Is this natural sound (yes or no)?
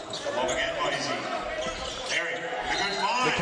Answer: yes